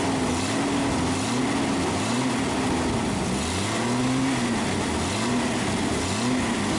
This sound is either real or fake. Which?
real